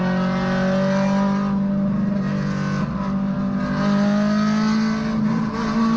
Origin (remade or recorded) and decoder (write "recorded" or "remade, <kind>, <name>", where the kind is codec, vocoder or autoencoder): recorded